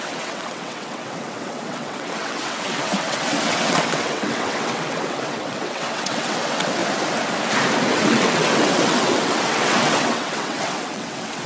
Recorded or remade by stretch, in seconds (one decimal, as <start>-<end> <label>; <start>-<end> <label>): 0.0-6.8 remade; 6.8-7.9 recorded; 7.9-11.5 remade